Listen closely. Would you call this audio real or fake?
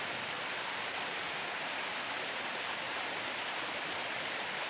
fake